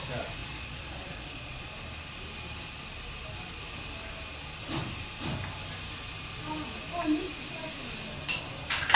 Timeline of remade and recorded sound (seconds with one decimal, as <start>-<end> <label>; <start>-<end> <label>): 0.0-0.4 recorded; 0.4-1.7 remade; 1.7-9.0 recorded